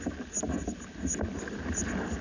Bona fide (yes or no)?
yes